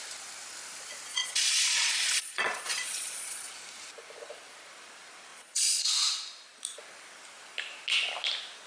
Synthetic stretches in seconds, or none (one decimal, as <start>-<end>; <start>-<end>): 1.1-3.5; 5.3-5.9